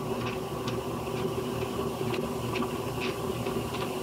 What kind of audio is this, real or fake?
real